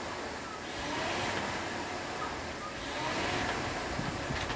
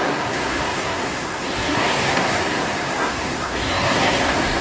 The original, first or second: first